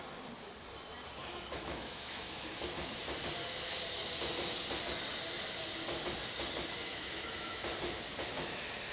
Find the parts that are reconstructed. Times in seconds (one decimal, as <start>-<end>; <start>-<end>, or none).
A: 1.2-3.0; 6.9-7.6